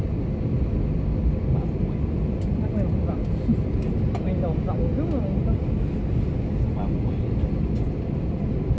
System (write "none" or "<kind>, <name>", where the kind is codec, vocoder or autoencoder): none